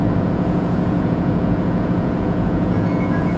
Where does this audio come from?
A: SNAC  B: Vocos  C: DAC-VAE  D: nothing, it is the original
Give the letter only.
B